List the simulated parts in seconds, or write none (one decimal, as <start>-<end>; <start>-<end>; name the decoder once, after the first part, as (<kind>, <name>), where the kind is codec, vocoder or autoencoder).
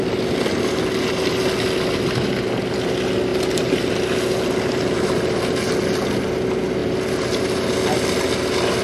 none